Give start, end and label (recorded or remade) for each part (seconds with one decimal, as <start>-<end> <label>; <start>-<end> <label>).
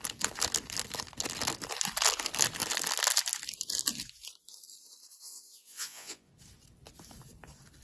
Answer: 0.0-5.2 recorded; 5.2-6.3 remade; 6.3-7.8 recorded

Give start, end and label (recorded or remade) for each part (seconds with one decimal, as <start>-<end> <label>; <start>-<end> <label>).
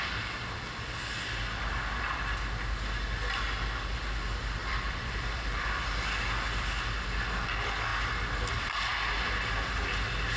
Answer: 0.0-4.6 recorded; 4.6-6.0 remade; 6.0-7.9 recorded; 7.9-9.1 remade; 9.1-10.4 recorded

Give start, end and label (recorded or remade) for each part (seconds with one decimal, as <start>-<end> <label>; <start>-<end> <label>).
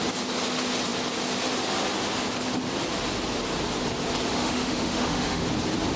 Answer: 0.0-4.3 recorded; 4.3-5.4 remade; 5.4-6.0 recorded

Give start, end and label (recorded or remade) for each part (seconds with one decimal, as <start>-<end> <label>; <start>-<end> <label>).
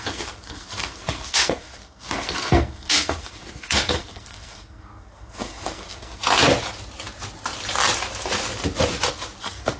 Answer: 0.0-6.2 remade; 6.2-9.4 recorded; 9.4-9.8 remade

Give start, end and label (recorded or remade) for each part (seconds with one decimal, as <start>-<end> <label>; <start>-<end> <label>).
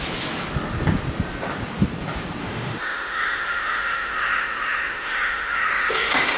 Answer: 0.0-2.4 recorded; 2.4-6.4 remade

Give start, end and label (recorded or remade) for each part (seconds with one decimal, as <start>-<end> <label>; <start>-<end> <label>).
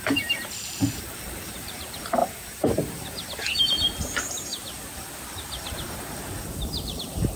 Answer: 0.0-4.5 remade; 4.5-5.5 recorded; 5.5-7.4 remade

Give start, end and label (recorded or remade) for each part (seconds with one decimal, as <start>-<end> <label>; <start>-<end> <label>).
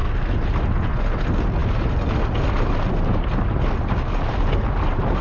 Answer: 0.0-5.2 recorded